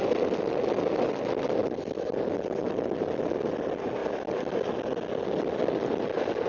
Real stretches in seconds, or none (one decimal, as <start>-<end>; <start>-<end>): 0.0-6.5